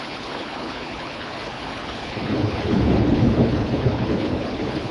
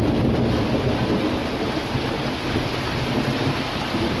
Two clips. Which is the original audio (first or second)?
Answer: second